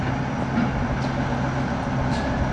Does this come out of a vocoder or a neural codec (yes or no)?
no